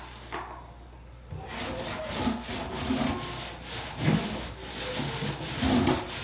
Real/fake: real